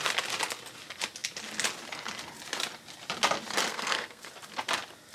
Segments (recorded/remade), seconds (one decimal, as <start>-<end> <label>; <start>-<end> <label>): 0.0-3.7 recorded; 3.7-4.3 remade; 4.3-5.1 recorded